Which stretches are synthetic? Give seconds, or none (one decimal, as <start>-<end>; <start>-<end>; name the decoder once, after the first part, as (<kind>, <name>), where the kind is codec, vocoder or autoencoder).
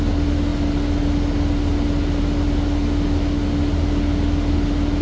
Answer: none